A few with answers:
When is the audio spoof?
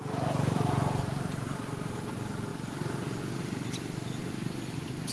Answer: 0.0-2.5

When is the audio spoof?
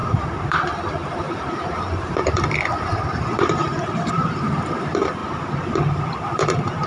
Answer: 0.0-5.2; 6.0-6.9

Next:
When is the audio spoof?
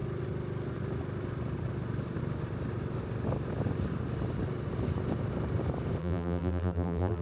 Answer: 6.0-7.2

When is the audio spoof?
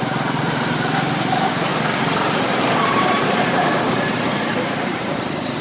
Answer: 0.0-1.7; 2.7-5.6